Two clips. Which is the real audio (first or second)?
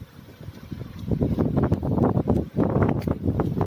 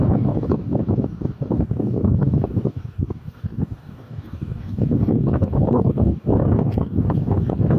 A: first